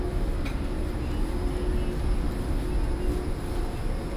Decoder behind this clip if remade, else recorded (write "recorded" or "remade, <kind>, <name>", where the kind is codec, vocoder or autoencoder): recorded